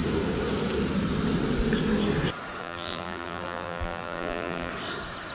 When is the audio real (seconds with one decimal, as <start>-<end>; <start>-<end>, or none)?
0.0-2.6; 4.7-5.3